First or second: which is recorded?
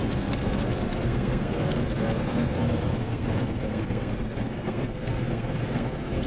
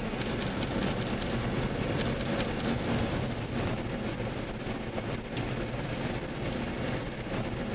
second